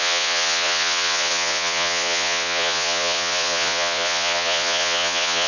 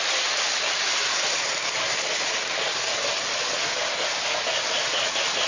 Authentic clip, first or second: second